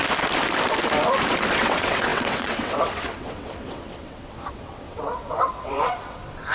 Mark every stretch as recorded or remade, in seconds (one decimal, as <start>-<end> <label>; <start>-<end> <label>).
0.0-1.5 recorded; 1.5-6.5 remade